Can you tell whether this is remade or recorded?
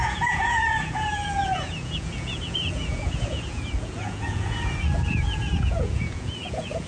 remade